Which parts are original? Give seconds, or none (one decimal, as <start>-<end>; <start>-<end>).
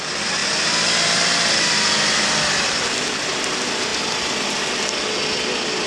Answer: 0.0-5.9